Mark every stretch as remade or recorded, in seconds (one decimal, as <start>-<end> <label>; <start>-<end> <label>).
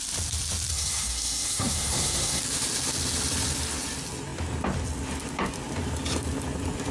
0.0-0.7 recorded; 0.7-2.4 remade; 2.4-6.9 recorded